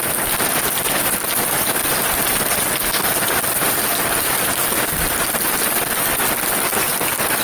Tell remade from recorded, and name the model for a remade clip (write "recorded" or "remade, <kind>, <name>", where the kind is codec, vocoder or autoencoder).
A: recorded